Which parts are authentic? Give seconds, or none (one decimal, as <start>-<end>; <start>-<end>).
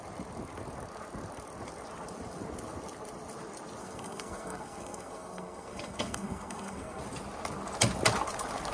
0.0-3.8; 7.0-8.7